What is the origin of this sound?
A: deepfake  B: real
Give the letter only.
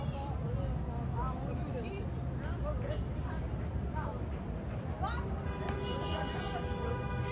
B